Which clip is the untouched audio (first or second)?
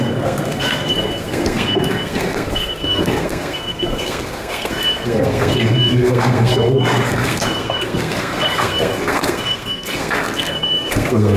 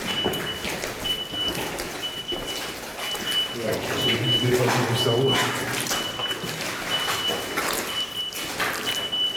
second